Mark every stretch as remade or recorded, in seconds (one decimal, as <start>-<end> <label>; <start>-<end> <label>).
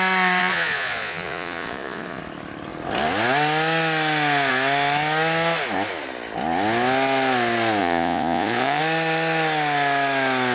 0.0-0.4 recorded; 0.4-2.2 remade; 2.2-7.8 recorded; 7.8-8.8 remade; 8.8-10.5 recorded